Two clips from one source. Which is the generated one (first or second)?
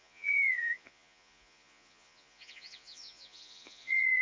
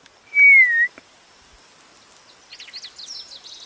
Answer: first